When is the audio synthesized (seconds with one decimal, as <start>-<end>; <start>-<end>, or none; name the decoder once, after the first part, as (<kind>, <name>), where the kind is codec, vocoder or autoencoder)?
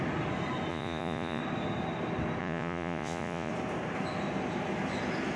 0.7-1.4 (vocoder, Vocos); 2.4-3.5